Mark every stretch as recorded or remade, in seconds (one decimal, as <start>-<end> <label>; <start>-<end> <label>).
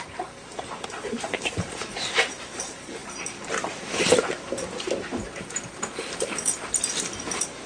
0.0-3.0 remade; 3.0-7.7 recorded